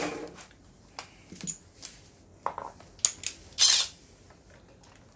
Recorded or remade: recorded